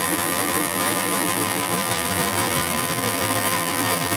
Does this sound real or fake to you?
fake